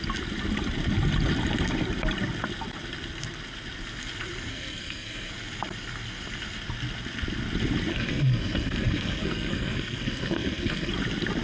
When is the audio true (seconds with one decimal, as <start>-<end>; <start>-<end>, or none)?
0.0-4.5; 5.3-7.9; 10.9-11.4